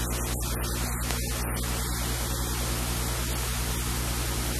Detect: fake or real real